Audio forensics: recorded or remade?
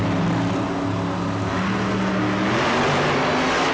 recorded